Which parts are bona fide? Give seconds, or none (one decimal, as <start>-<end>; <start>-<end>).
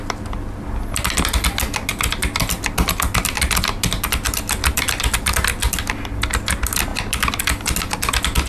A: 0.0-8.5